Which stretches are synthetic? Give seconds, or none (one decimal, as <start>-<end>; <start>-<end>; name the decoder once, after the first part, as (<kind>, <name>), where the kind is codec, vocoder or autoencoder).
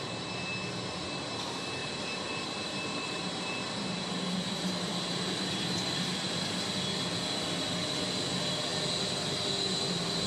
1.8-6.1 (vocoder, BigVGAN v2)